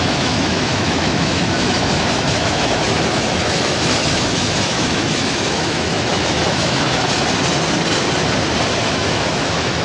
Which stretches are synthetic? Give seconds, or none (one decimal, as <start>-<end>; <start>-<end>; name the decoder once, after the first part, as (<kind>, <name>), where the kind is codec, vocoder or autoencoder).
0.0-7.0 (autoencoder, DAC-VAE); 8.8-9.8